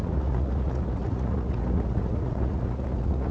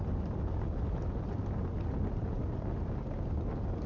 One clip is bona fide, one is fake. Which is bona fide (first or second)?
second